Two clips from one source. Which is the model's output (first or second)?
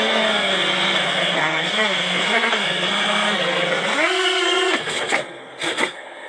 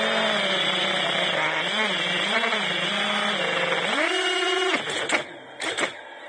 first